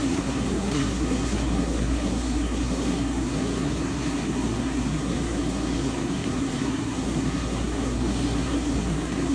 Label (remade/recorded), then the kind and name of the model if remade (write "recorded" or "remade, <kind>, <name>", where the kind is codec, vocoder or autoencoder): remade, codec, SNAC